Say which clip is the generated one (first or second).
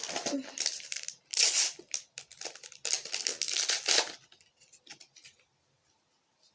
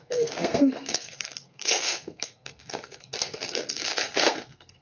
second